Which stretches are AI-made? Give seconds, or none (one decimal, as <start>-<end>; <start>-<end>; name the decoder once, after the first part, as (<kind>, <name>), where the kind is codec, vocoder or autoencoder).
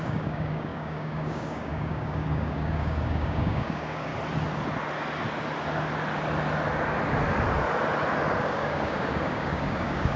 0.0-4.1 (codec, DAC); 8.4-10.2